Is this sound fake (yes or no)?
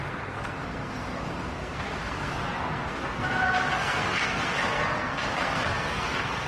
yes